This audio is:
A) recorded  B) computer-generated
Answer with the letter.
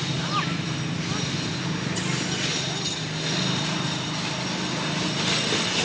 A